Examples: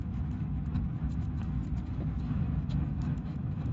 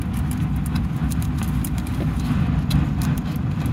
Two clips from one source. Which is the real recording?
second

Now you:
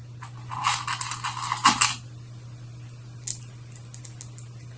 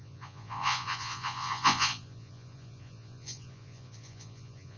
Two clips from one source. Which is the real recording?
first